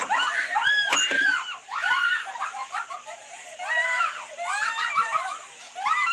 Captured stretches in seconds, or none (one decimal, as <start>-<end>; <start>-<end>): 0.0-6.1